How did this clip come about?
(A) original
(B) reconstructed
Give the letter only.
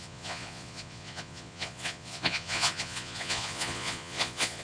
B